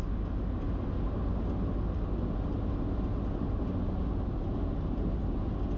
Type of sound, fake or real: real